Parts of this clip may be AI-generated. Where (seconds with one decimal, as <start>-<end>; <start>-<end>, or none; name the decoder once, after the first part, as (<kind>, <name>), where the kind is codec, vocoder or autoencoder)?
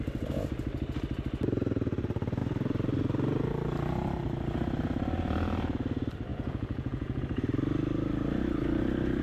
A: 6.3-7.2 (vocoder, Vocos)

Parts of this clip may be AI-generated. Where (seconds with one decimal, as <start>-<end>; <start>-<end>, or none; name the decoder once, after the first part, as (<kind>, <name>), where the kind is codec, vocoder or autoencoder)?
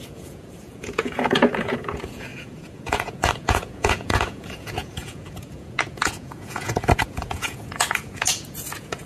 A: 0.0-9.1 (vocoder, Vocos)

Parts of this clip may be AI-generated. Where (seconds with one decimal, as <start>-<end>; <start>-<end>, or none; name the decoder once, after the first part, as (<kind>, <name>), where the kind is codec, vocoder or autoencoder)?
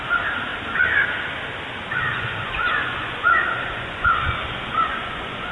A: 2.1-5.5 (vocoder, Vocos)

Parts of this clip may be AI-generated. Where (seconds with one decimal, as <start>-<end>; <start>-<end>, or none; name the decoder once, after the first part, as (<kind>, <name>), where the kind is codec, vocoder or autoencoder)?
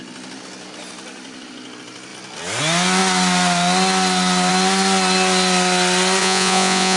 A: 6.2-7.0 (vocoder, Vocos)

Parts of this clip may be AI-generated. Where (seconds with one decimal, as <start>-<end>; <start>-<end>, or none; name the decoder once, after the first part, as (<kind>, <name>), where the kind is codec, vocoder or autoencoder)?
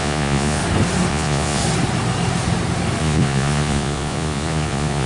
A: 0.0-0.6 (vocoder, Vocos); 1.1-1.6; 3.0-5.1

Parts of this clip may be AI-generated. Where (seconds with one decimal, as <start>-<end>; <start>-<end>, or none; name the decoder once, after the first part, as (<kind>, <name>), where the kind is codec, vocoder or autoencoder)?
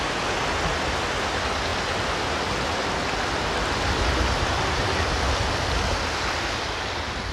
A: none